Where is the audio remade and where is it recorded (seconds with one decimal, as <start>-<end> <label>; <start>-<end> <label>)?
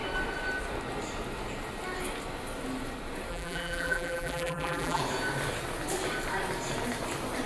0.0-3.3 recorded; 3.3-5.0 remade; 5.0-7.5 recorded